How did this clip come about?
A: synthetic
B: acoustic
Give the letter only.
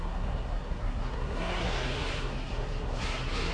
A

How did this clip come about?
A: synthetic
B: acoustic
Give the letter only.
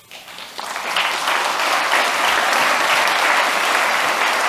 B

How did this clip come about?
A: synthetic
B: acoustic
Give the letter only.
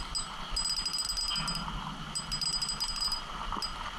B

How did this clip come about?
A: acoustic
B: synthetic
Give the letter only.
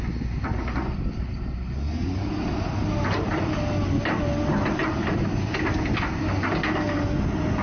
A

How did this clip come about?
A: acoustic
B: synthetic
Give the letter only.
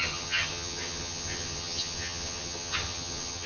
B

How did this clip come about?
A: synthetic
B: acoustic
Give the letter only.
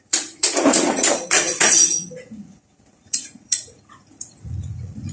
A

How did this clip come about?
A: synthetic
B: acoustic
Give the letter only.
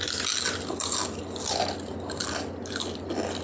B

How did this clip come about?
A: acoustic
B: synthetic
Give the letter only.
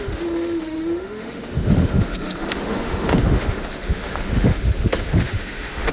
B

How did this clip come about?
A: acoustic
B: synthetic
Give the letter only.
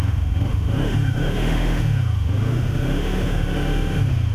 B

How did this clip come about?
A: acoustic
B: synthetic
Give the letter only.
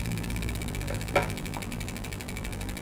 B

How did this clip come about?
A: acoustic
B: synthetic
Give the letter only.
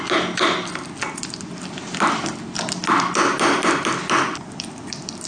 A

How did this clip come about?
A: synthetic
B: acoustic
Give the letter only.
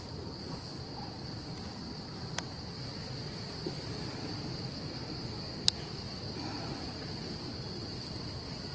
B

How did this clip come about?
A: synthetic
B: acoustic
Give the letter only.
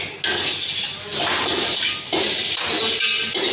B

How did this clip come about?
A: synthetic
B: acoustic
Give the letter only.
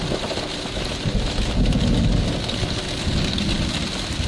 B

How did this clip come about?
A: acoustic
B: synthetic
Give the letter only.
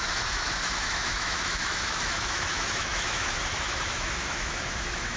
B